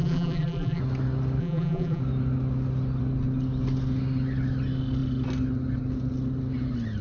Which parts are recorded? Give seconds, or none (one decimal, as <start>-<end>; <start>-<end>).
0.8-1.4; 2.0-7.0